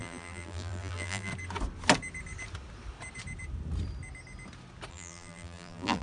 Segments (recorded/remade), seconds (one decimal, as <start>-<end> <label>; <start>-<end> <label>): 0.0-1.3 remade; 1.3-4.9 recorded; 4.9-6.0 remade